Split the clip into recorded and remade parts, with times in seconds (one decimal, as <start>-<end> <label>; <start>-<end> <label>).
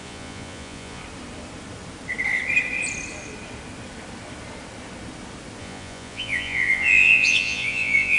0.0-1.0 remade; 1.0-5.6 recorded; 5.6-8.2 remade